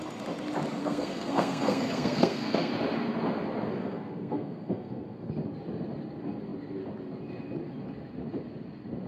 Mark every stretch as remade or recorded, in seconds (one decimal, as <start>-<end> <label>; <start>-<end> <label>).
0.0-0.8 recorded; 0.8-2.7 remade; 2.7-3.8 recorded; 3.8-5.3 remade; 5.3-9.1 recorded